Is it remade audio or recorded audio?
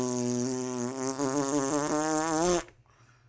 recorded